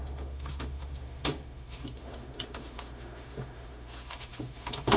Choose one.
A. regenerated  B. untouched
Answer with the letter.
A